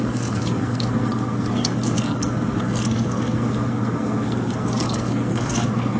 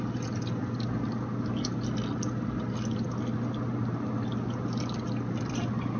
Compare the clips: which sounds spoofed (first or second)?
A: first